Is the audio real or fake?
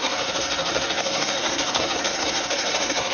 fake